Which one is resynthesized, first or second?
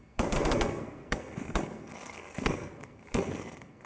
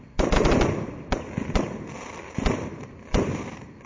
first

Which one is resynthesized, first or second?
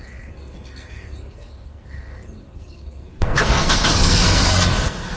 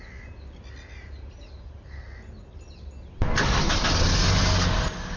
first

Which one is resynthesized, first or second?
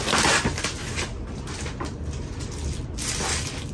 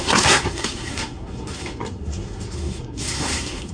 second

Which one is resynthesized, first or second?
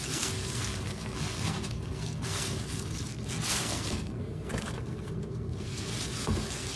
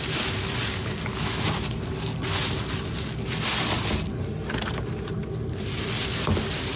first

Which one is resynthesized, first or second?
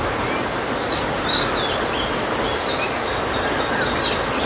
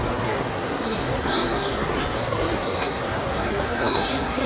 second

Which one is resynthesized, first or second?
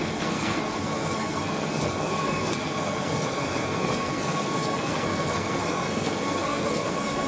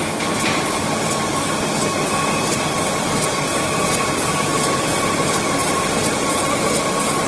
first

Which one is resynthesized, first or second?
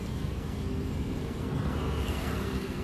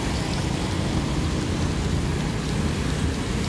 first